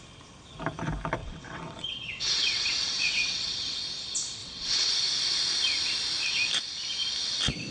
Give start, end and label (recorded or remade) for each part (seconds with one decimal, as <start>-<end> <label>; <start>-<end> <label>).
0.0-1.2 recorded; 1.2-3.8 remade; 3.8-4.4 recorded; 4.4-4.9 remade; 4.9-7.7 recorded